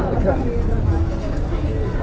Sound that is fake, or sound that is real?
real